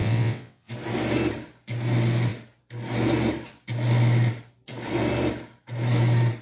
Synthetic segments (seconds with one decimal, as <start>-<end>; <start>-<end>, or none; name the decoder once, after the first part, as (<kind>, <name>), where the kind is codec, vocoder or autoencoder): 0.0-0.7 (vocoder, WaveNeXt)